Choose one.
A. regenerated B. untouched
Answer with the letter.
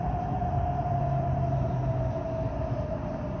B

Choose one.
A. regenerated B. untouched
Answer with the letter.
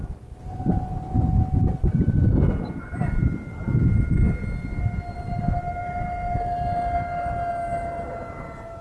B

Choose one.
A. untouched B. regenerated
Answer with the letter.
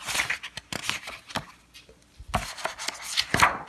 A